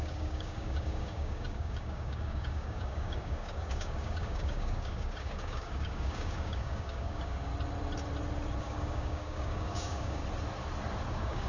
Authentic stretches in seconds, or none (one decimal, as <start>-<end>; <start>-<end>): 7.5-8.6; 10.2-11.1